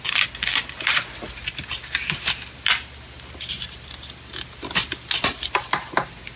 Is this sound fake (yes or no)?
no